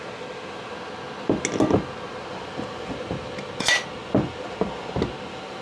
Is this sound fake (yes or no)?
no